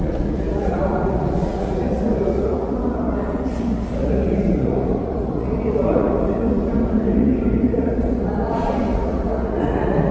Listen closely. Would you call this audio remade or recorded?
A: remade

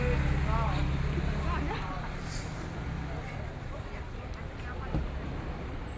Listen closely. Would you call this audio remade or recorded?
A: recorded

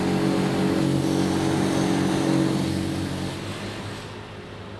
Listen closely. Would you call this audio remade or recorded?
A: recorded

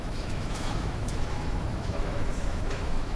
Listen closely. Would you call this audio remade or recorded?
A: remade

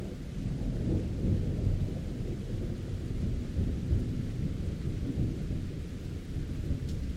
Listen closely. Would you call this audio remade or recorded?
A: recorded